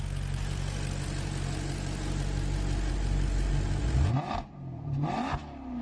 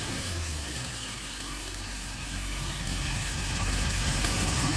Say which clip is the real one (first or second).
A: first